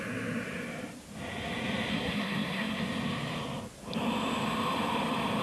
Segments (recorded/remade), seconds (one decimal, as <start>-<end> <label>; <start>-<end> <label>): 0.0-1.9 recorded; 1.9-2.8 remade; 2.8-5.4 recorded